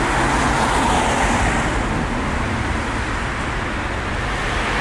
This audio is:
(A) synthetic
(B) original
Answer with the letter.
B